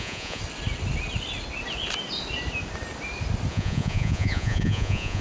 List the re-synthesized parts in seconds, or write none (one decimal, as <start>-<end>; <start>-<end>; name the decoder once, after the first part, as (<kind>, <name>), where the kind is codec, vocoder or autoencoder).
0.0-0.4 (vocoder, Vocos); 3.5-5.2